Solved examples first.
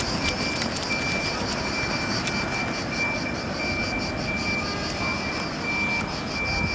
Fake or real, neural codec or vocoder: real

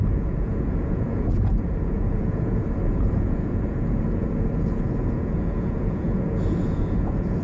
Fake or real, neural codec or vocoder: fake, vocoder, Vocos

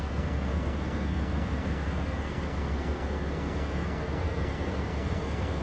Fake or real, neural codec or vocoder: fake, codec, SNAC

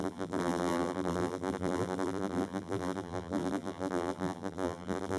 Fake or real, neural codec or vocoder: fake, vocoder, BigVGAN v2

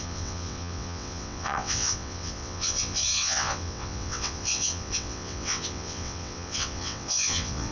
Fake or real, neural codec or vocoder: fake, vocoder, WaveNeXt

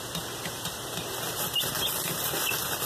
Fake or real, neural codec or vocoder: real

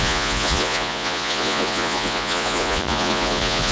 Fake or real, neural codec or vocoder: fake, vocoder, Vocos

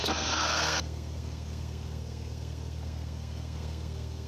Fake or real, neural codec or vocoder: fake, codec, SNAC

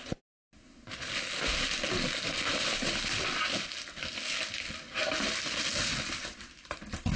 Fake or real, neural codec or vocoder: real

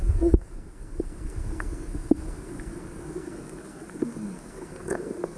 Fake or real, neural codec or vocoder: fake, codec, SNAC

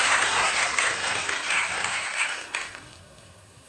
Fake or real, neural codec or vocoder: fake, codec, SNAC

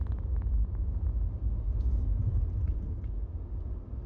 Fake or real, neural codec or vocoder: real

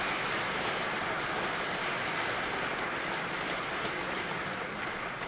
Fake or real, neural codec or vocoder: real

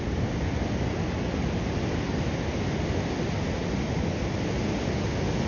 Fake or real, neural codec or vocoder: real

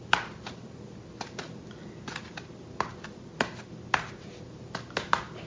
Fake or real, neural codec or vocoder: real